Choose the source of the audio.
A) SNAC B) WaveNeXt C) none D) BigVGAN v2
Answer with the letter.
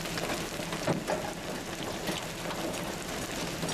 C